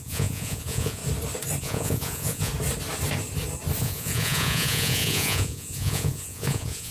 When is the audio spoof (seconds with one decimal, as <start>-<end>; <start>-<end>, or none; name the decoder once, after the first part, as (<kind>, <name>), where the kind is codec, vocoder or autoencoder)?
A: 0.0-1.0 (vocoder, Vocos); 1.6-2.5; 3.8-6.9